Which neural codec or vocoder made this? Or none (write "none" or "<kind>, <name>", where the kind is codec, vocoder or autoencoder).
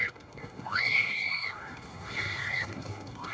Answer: codec, SNAC